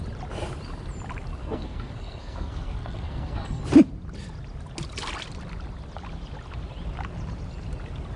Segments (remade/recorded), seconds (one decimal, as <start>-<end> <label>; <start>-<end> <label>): 0.0-1.4 recorded; 1.4-3.6 remade; 3.6-8.2 recorded

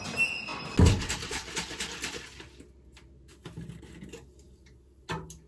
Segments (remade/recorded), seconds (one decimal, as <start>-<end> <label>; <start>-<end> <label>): 0.0-5.5 recorded

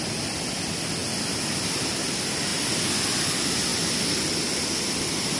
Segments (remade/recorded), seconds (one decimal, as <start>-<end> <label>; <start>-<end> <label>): 0.0-5.4 recorded

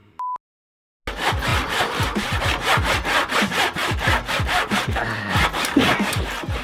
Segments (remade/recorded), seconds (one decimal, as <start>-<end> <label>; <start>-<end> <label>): 0.0-1.5 recorded; 1.5-2.4 remade; 2.4-3.8 recorded; 3.8-5.0 remade; 5.0-6.6 recorded

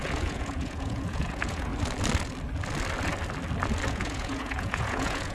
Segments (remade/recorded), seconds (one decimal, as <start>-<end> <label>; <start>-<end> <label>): 0.0-1.7 remade; 1.7-3.9 recorded; 3.9-5.3 remade

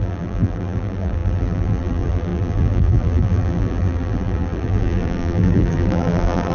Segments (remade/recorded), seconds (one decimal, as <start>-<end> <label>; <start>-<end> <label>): 0.0-6.5 remade